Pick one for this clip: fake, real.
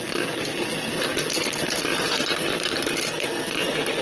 real